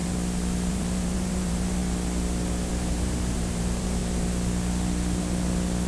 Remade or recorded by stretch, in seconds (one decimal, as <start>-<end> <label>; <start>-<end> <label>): 0.0-0.7 recorded; 0.7-1.8 remade; 1.8-2.7 recorded; 2.7-4.0 remade; 4.0-5.9 recorded